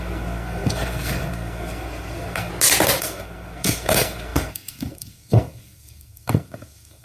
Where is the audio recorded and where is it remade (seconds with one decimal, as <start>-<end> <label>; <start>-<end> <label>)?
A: 0.0-2.5 remade; 2.5-3.0 recorded; 3.0-7.0 remade